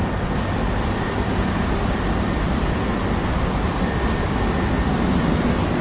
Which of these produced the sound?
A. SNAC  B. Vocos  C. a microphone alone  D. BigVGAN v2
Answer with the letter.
C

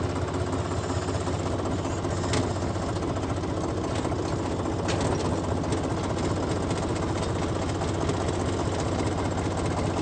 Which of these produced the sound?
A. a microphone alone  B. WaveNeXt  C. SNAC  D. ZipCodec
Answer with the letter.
A